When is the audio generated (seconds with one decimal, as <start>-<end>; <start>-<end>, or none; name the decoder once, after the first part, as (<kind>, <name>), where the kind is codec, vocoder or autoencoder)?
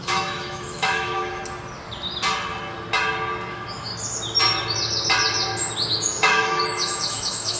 0.0-1.4 (autoencoder, DAC-VAE); 3.5-3.9; 5.9-7.6